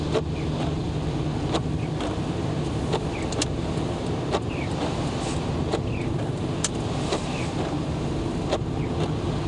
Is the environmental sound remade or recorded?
recorded